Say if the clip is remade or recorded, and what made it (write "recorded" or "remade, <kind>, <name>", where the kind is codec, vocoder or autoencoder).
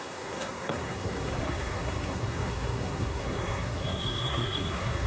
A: remade, codec, SNAC